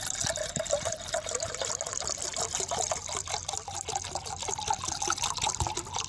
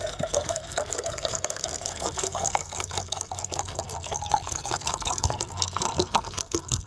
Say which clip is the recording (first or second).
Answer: first